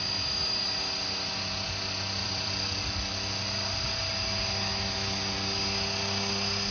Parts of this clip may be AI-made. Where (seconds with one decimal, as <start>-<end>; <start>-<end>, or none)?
2.2-2.8